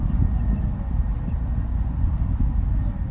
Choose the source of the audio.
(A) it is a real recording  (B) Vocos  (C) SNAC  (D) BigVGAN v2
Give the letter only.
A